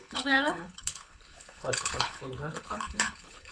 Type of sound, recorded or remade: remade